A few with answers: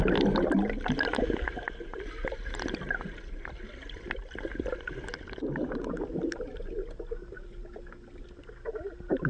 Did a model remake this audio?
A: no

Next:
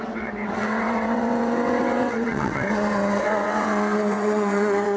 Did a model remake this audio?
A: yes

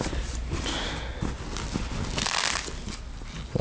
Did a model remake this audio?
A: no